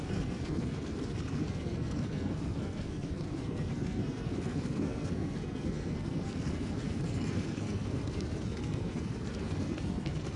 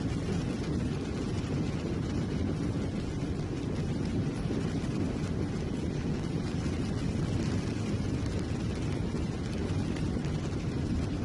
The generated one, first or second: first